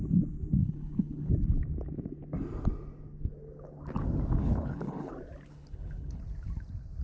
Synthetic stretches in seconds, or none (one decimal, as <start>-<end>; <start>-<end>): 0.6-1.3; 4.4-5.1; 5.5-6.2